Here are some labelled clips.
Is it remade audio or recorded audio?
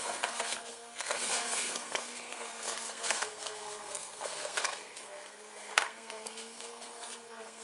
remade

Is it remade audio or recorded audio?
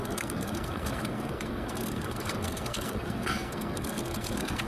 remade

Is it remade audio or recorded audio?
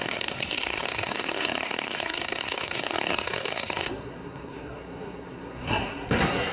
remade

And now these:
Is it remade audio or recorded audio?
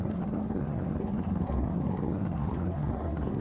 remade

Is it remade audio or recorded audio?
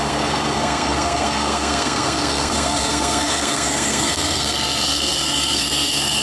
remade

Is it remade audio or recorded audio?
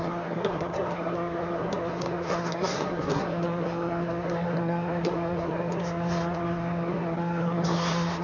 remade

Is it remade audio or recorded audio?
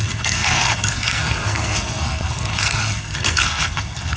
remade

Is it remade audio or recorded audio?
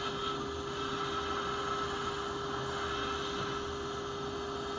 recorded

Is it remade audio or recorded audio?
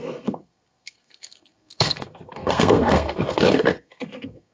remade